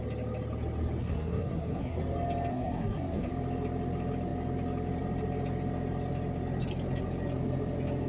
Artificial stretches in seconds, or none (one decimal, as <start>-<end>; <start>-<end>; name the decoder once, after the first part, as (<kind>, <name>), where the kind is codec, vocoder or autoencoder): 1.0-2.0 (codec, SNAC); 2.5-3.3